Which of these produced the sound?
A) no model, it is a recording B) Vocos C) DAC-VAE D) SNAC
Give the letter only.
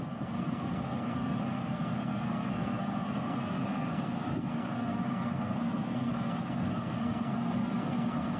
D